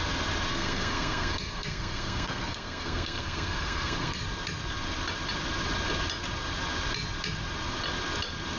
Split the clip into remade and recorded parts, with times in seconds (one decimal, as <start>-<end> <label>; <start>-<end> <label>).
0.0-0.5 recorded; 0.5-4.2 remade; 4.2-8.6 recorded